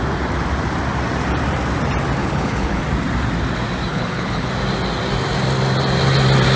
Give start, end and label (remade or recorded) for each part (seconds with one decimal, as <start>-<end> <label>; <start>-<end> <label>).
0.0-2.2 recorded; 2.2-2.8 remade; 2.8-3.9 recorded; 3.9-4.5 remade; 4.5-6.6 recorded